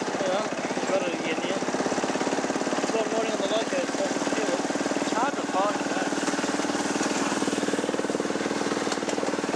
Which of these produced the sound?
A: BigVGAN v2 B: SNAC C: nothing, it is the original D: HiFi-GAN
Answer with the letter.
C